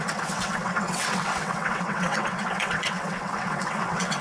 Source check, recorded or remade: remade